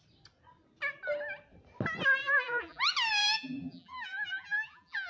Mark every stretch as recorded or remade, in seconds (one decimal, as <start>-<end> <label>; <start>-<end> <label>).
0.0-2.2 recorded; 2.2-2.8 remade; 2.8-3.2 recorded; 3.2-5.1 remade